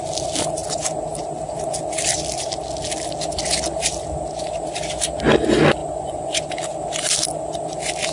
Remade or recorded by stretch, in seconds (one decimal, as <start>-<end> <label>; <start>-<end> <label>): 0.0-5.8 recorded; 5.8-6.5 remade; 6.5-8.1 recorded

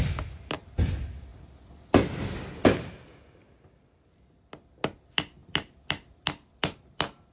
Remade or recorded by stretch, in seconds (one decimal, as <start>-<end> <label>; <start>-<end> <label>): 0.0-7.3 recorded

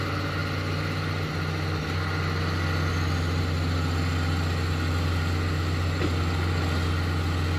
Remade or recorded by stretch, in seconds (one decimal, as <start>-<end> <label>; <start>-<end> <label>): 0.0-7.6 recorded

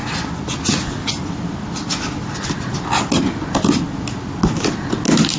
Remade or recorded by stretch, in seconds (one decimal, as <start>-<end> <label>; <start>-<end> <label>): 0.0-5.4 recorded